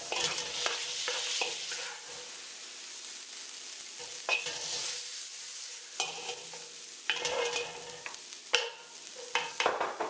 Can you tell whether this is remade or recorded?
recorded